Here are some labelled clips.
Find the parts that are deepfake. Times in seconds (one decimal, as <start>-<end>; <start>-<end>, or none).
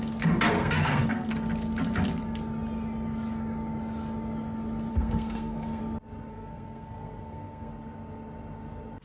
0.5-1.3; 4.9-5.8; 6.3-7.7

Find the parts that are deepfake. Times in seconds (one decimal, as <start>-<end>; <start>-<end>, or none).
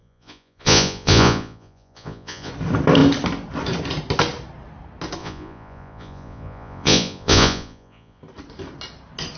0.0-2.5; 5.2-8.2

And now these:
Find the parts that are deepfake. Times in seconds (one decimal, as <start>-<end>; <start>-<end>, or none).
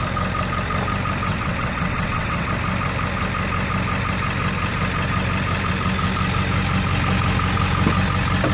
1.3-2.5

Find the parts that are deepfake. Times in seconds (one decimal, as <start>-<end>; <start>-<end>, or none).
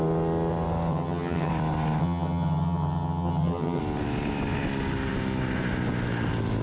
0.9-1.5; 2.0-3.8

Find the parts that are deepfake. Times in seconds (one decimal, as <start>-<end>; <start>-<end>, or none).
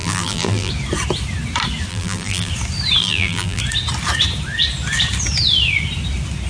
0.0-0.7; 1.9-2.5; 3.0-3.6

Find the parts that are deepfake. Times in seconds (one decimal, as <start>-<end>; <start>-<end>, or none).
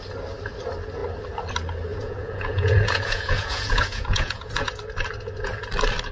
1.9-4.7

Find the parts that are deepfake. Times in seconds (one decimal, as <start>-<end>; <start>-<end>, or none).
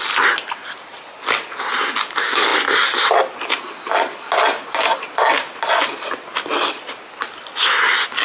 none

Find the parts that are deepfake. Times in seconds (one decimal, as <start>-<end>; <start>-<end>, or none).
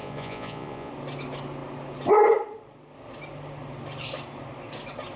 0.0-0.9